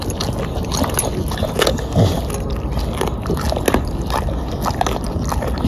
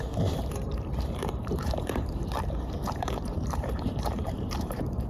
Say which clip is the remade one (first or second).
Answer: second